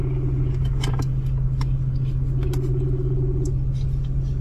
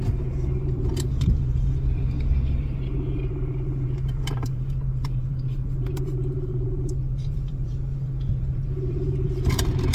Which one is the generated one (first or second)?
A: second